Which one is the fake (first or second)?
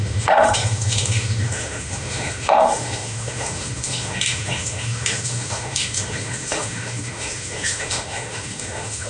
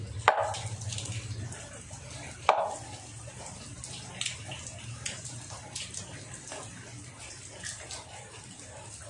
first